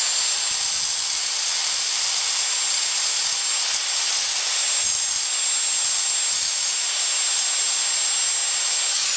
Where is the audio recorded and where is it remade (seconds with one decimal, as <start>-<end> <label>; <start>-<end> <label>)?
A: 0.0-9.2 recorded